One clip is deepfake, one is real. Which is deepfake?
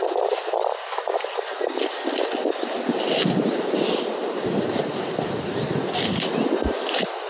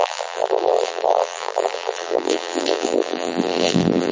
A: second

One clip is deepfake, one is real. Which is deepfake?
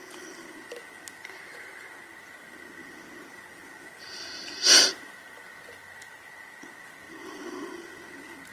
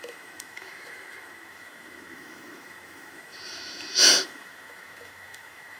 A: second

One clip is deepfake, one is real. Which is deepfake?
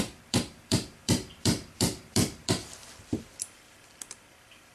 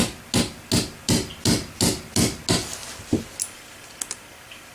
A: first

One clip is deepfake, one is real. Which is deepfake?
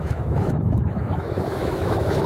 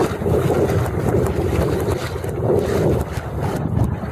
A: first